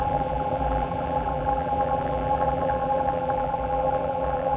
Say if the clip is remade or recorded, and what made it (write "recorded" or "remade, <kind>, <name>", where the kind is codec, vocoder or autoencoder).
remade, vocoder, BigVGAN v2